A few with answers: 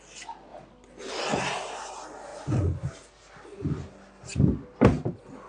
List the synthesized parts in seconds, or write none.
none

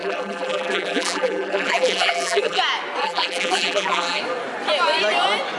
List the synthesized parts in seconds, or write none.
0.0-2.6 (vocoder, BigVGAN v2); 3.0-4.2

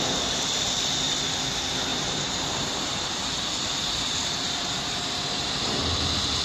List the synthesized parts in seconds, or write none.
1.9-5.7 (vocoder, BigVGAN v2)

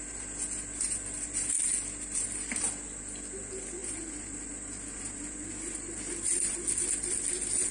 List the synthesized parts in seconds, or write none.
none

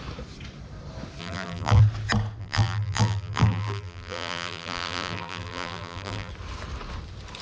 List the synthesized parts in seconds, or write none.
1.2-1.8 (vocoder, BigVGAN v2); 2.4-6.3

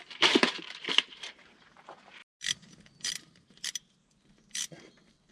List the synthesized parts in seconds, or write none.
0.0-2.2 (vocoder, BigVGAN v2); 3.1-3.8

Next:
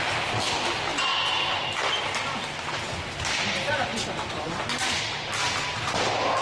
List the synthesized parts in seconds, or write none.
0.9-3.4 (vocoder, BigVGAN v2); 3.9-5.0